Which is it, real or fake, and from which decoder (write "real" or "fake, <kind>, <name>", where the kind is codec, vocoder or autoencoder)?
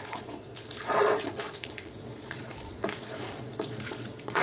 fake, vocoder, Vocos